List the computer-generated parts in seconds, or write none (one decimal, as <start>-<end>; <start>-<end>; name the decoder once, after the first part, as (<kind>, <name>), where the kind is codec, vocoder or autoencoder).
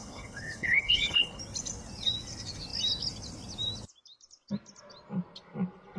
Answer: 0.0-1.4 (codec, HILCodec)